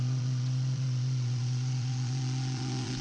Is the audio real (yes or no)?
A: no